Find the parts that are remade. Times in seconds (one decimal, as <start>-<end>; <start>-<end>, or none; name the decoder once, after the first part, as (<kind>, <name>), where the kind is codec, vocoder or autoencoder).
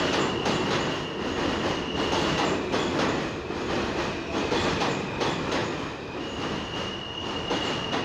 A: none